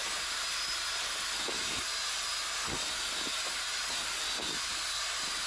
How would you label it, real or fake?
real